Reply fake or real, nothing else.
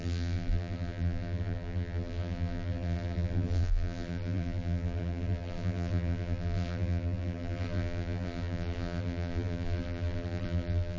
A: fake